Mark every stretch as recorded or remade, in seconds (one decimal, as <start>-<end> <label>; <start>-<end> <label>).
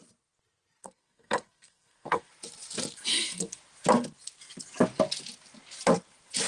0.0-0.8 recorded; 0.8-2.3 remade; 2.3-3.1 recorded; 3.1-3.6 remade; 3.6-6.5 recorded